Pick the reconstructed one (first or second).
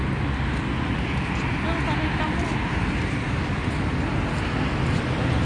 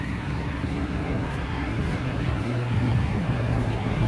second